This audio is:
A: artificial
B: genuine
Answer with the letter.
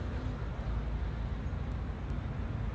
B